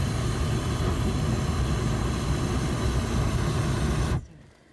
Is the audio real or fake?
real